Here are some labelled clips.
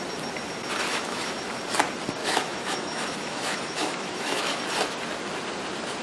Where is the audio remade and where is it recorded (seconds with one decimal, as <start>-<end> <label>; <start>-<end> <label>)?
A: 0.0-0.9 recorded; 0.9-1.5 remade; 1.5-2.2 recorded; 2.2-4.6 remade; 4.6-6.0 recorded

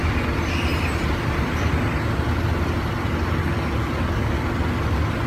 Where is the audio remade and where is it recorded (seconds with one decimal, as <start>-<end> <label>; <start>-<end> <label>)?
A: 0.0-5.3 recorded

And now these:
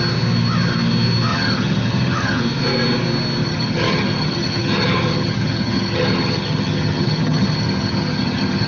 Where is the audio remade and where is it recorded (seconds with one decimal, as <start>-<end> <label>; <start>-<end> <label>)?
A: 0.0-1.3 recorded; 1.3-2.4 remade; 2.4-3.4 recorded; 3.4-8.7 remade